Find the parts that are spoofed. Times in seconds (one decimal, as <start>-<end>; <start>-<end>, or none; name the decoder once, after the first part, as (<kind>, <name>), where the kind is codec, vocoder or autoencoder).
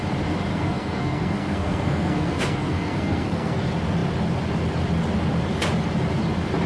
0.5-3.6 (codec, SNAC)